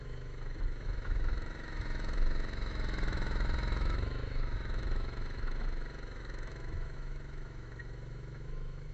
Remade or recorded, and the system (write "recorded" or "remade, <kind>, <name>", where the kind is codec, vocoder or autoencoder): remade, autoencoder, DAC-VAE